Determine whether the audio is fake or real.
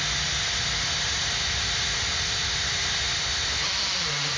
real